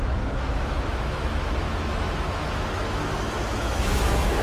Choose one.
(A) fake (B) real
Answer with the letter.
A